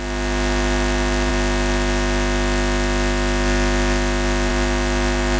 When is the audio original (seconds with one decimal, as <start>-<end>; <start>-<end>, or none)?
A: 0.0-5.4